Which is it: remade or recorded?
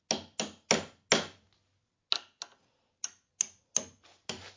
recorded